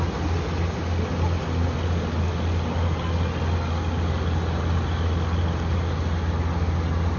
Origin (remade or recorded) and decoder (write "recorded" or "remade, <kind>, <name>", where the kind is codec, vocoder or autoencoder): recorded